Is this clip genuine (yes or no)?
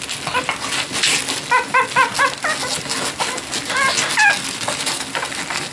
yes